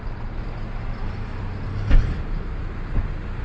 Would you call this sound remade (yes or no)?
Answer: no